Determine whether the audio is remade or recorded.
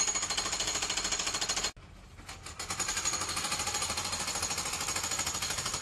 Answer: recorded